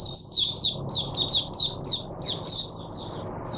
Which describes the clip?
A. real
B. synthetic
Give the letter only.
A